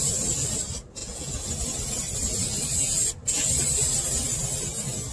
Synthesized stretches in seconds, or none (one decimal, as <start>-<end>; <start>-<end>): 1.0-1.5